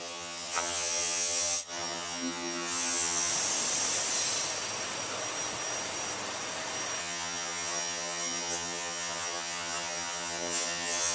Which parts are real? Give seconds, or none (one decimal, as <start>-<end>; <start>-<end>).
3.3-7.0